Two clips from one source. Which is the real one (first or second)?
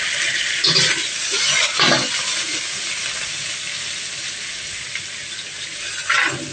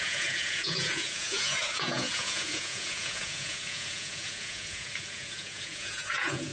first